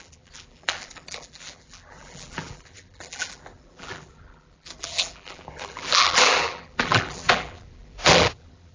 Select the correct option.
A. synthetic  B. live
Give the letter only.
A